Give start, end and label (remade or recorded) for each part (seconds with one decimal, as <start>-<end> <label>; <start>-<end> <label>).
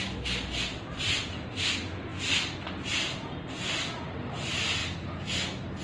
0.0-5.8 recorded